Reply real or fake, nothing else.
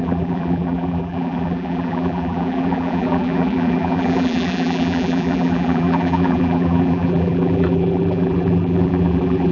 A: fake